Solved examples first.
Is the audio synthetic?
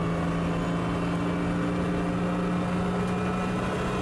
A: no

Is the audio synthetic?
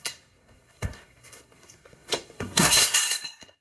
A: yes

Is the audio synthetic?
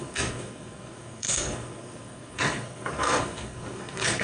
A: yes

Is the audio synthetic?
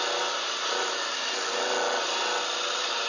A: no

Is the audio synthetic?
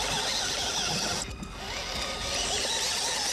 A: no